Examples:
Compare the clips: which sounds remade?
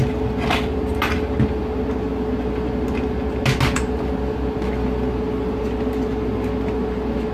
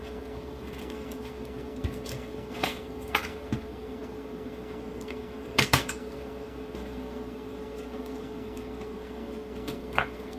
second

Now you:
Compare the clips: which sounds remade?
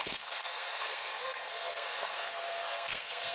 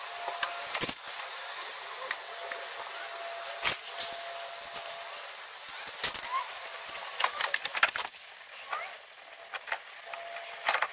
first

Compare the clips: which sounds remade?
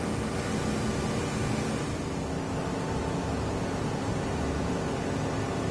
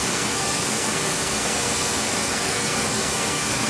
second